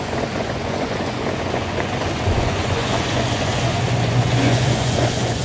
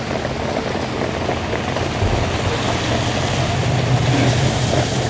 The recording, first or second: second